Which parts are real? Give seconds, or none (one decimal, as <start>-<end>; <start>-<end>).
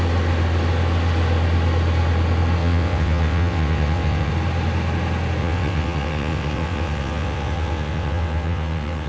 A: 0.0-2.6; 4.3-5.4